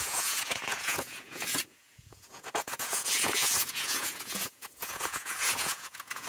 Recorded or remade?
remade